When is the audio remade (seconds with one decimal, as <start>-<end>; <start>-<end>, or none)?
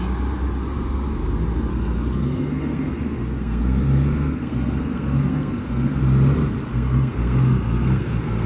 1.7-6.0; 6.7-8.5